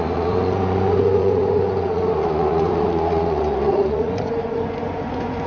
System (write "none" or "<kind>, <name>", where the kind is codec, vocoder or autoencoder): vocoder, Vocos